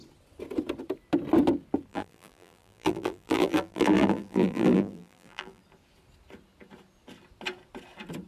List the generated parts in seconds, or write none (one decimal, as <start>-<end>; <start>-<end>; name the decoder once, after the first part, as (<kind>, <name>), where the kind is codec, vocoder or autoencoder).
1.9-5.6 (vocoder, BigVGAN v2)